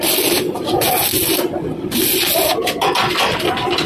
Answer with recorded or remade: recorded